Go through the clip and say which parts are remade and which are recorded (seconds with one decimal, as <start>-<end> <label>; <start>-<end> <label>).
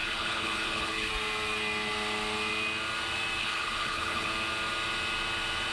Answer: 0.0-1.1 remade; 1.1-3.4 recorded; 3.4-4.3 remade; 4.3-5.7 recorded